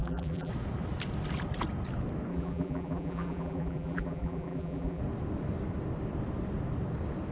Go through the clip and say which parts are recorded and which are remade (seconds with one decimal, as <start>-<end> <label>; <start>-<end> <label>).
0.0-0.5 remade; 0.5-2.3 recorded; 2.3-5.0 remade; 5.0-7.3 recorded